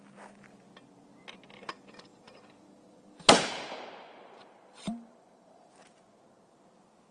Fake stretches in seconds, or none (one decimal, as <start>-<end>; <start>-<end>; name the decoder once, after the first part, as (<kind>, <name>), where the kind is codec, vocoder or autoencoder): 2.1-5.7 (vocoder, BigVGAN v2)